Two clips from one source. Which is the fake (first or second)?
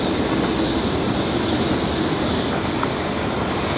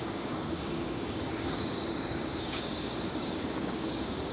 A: second